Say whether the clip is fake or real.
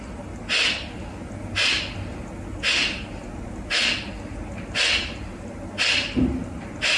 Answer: real